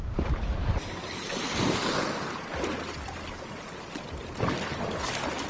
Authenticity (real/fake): real